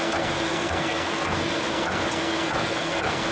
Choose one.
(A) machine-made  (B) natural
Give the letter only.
A